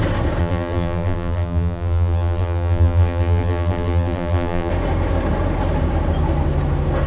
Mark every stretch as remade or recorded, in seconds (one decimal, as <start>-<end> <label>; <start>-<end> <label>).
0.0-0.4 recorded; 0.4-4.7 remade; 4.7-7.1 recorded